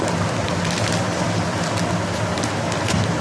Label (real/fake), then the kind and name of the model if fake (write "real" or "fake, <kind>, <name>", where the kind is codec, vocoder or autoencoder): real